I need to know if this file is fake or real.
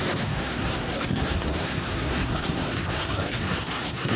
fake